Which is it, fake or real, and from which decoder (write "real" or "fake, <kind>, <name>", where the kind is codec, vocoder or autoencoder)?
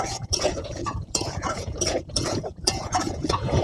fake, vocoder, Vocos